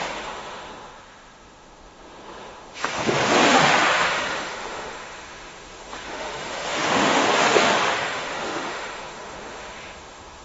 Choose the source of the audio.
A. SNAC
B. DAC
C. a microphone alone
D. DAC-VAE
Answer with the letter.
D